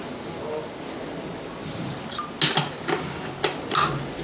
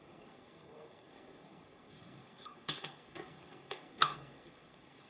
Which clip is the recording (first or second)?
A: first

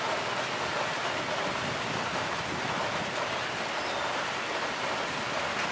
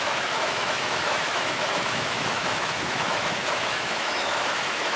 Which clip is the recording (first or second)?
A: first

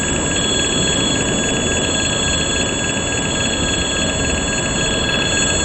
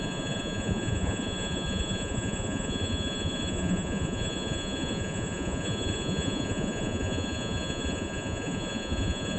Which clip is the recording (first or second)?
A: first